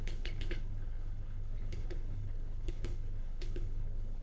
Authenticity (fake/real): fake